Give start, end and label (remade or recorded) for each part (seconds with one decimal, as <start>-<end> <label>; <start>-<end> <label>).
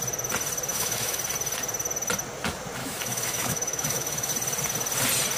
0.0-0.7 recorded; 0.7-1.2 remade; 1.2-2.8 recorded; 2.8-4.3 remade; 4.3-5.4 recorded